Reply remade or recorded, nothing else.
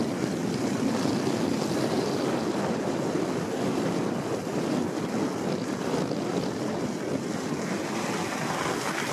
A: recorded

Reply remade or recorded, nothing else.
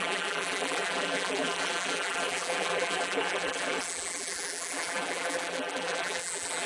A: remade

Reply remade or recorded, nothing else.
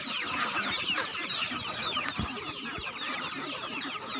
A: remade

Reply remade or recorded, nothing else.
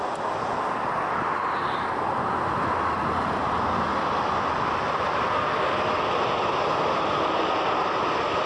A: recorded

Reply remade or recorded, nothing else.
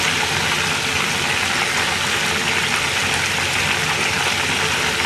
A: recorded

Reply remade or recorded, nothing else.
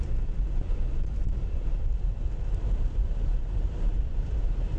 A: remade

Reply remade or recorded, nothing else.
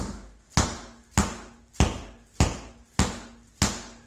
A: recorded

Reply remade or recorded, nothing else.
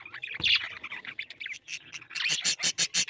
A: recorded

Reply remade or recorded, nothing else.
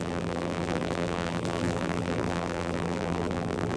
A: remade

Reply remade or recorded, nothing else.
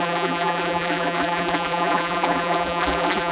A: remade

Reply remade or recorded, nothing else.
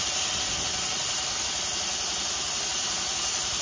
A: remade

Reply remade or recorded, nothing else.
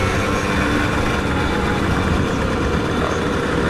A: recorded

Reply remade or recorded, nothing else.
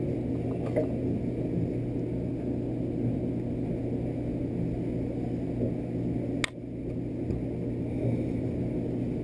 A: recorded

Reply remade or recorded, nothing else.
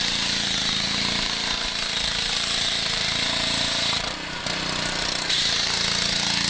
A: remade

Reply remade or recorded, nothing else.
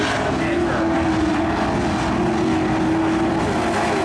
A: recorded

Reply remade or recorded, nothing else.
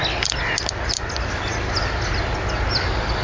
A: recorded